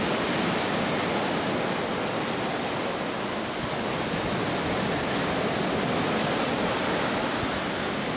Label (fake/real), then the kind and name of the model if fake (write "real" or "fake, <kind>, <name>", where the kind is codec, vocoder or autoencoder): real